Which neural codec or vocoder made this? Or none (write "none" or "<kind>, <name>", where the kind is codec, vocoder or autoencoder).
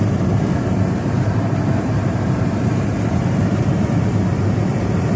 vocoder, BigVGAN v2